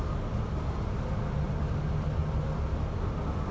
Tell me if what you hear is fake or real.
real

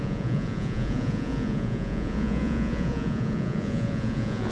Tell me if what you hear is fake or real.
fake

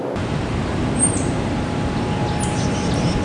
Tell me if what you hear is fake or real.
real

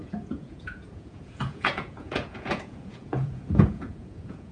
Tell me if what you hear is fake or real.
fake